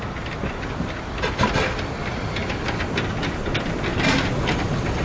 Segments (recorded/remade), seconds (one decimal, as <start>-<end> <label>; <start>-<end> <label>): 0.0-3.9 recorded; 3.9-5.0 remade